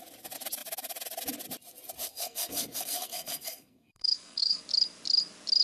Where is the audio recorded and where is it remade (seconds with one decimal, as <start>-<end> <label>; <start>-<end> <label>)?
0.0-2.1 recorded; 2.1-4.6 remade; 4.6-5.6 recorded